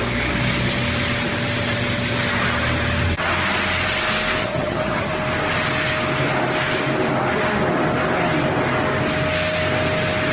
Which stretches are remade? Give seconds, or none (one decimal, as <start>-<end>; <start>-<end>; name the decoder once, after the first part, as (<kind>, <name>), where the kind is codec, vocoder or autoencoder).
4.4-5.1 (vocoder, HiFi-GAN)